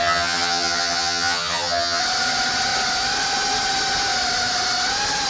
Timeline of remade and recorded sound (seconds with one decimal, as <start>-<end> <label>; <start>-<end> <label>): 0.0-2.0 remade; 2.0-5.3 recorded